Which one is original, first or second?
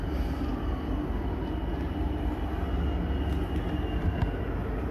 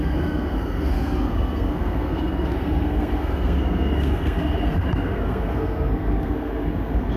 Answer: first